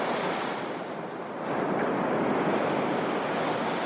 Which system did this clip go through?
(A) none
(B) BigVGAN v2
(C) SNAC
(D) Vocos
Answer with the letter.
A